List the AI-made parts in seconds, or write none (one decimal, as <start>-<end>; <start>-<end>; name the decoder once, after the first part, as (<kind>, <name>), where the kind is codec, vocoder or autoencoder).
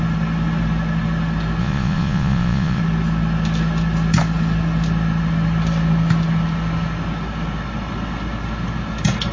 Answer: 1.6-2.8 (vocoder, Vocos)